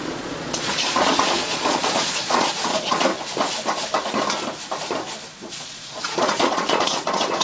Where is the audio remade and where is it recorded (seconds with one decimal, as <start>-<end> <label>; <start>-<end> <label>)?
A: 0.0-3.1 remade; 3.1-5.4 recorded; 5.4-7.4 remade